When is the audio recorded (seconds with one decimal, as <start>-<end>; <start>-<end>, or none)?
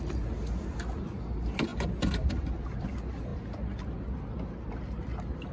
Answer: 0.0-5.5